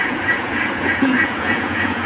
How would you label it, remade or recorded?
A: remade